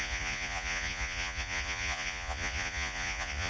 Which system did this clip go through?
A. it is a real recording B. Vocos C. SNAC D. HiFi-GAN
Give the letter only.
B